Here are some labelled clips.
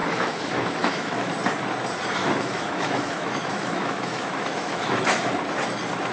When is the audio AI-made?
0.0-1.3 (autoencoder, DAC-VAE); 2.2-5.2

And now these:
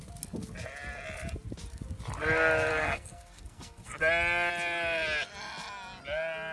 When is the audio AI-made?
2.7-4.0 (codec, SNAC)

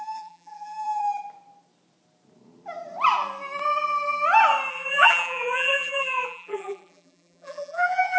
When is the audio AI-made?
0.0-1.0 (vocoder, BigVGAN v2); 4.7-8.2

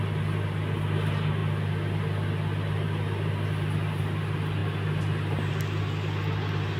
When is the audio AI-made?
none

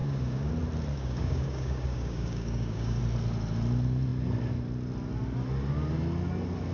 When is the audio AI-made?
0.0-0.5 (codec, DAC); 0.9-3.0